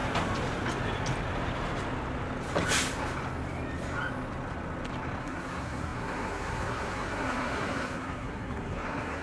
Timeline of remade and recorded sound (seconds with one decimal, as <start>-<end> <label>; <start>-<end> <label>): 0.0-5.2 recorded; 5.2-9.2 remade